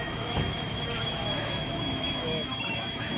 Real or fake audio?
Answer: fake